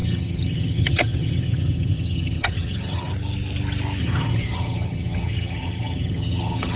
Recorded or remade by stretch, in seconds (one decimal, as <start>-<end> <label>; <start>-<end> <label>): 0.0-3.1 remade; 3.1-4.0 recorded; 4.0-6.8 remade